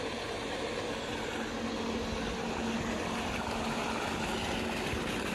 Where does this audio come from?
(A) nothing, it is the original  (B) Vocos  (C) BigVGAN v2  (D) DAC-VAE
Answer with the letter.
A